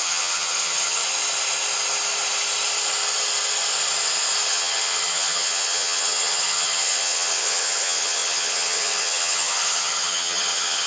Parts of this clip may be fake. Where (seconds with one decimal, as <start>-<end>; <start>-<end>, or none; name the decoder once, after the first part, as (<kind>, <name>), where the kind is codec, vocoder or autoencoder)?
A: 0.0-1.0 (vocoder, HiFi-GAN); 4.5-10.9